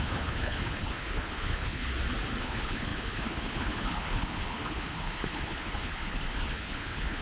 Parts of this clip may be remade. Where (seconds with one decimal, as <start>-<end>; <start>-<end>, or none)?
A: 0.0-1.9; 2.4-7.2